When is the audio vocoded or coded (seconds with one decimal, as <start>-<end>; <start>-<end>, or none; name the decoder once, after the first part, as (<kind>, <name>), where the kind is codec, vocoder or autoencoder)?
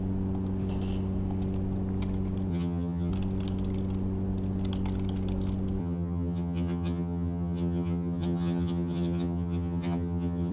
2.5-3.1 (vocoder, HiFi-GAN); 5.8-10.5